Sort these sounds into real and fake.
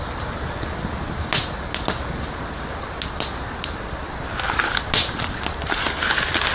real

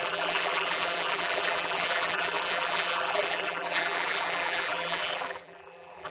fake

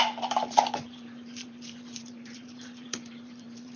fake